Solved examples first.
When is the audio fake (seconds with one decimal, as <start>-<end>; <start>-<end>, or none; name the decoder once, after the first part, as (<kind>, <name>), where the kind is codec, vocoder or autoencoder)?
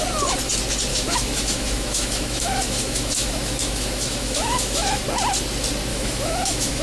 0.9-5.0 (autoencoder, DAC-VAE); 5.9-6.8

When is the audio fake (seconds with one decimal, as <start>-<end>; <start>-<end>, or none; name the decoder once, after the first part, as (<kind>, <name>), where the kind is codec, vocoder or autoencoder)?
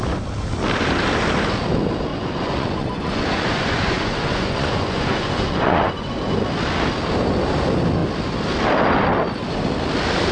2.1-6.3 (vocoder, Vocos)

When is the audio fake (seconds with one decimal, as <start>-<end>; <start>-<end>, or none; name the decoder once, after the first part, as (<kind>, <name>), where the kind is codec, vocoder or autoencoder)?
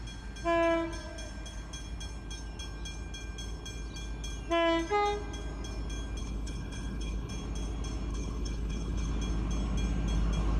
6.2-7.3 (codec, HILCodec); 8.1-9.1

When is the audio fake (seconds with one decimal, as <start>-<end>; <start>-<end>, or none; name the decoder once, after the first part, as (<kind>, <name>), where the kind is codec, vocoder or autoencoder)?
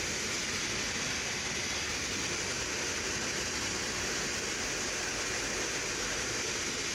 none